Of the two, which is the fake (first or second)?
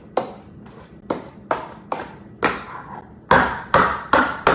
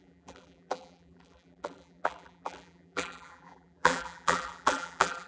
second